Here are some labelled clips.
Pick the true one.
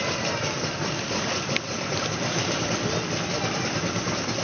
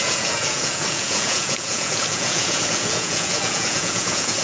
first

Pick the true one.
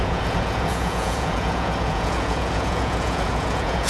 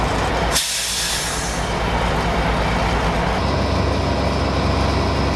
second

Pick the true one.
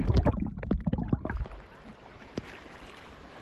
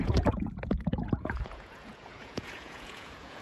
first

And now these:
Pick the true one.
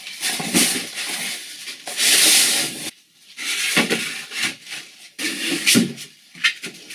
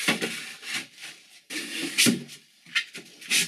second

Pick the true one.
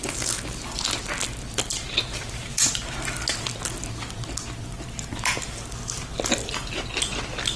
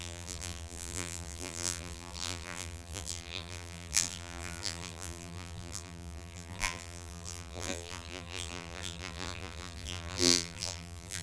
first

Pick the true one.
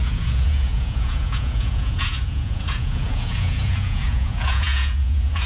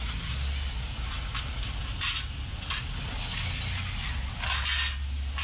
second